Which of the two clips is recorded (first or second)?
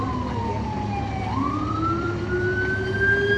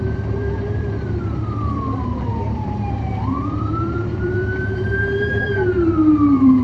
first